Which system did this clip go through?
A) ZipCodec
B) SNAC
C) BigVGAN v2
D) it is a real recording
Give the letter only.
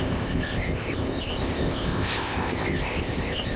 A